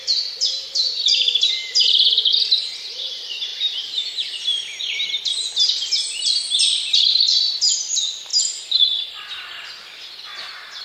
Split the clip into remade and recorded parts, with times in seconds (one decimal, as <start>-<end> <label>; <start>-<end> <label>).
0.0-3.5 recorded; 3.5-5.1 remade; 5.1-6.9 recorded; 6.9-7.6 remade; 7.6-10.8 recorded